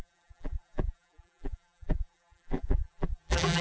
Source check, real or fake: fake